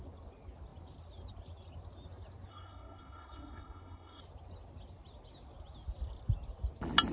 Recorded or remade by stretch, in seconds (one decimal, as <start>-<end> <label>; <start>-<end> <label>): 0.0-2.5 recorded; 2.5-4.2 remade; 4.2-7.1 recorded